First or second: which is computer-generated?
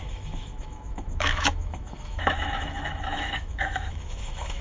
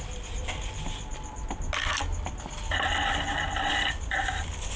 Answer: first